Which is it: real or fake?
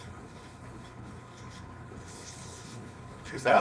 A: fake